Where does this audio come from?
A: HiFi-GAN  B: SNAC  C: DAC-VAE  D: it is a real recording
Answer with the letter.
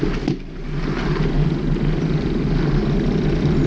D